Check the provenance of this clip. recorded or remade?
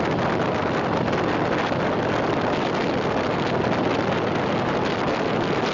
recorded